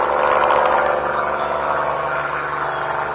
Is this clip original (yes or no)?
yes